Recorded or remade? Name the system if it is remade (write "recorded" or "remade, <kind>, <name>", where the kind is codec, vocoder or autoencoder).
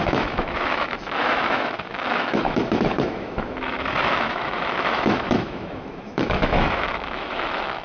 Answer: remade, autoencoder, DAC-VAE